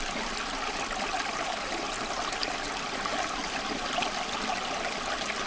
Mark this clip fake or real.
real